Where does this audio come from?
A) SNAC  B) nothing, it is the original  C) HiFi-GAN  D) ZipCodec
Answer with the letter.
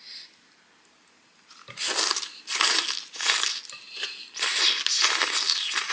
B